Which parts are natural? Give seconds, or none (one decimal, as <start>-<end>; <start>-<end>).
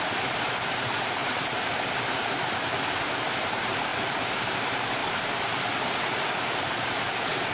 0.0-7.5